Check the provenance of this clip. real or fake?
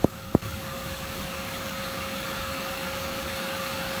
fake